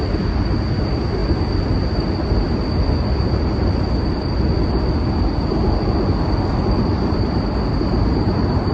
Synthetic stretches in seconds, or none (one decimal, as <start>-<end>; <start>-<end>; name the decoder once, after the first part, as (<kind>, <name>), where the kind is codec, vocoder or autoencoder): 6.9-8.7 (vocoder, BigVGAN v2)